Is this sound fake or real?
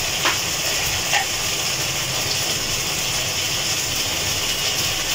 real